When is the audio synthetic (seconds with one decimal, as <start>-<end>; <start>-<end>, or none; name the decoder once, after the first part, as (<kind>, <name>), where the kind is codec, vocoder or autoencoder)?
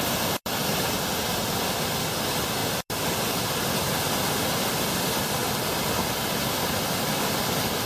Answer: none